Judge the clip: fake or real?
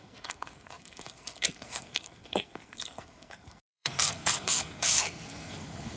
fake